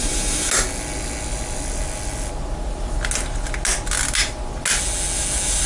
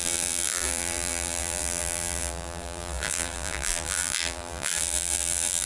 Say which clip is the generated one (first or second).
second